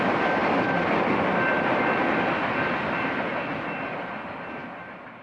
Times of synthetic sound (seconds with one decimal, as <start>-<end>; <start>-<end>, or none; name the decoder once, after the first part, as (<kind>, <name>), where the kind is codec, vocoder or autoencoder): none

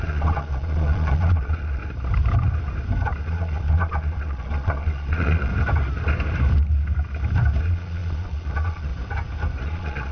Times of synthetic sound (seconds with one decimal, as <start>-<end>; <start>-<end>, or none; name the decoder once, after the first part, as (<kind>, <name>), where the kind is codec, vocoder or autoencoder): 0.0-1.8 (vocoder, Vocos); 3.2-5.5; 7.6-8.9; 9.6-10.1

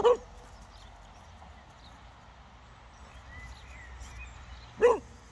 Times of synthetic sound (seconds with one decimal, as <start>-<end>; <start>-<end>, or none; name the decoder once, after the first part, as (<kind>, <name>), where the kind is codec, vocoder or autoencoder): none

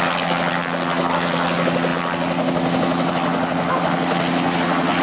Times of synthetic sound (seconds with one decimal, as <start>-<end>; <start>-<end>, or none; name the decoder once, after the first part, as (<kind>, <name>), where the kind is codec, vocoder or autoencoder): none

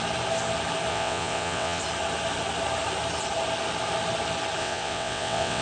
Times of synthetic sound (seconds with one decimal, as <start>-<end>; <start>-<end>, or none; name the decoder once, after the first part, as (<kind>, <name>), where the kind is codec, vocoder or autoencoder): 0.9-1.8 (vocoder, WaveNeXt); 4.6-5.6

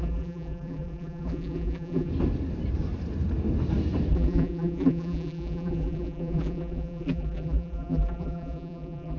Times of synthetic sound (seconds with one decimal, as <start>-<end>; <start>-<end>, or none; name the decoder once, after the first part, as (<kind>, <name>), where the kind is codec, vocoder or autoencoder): 0.0-2.1 (vocoder, BigVGAN v2); 4.1-9.2